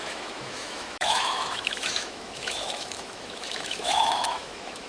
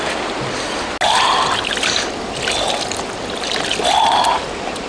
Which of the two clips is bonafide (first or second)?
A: second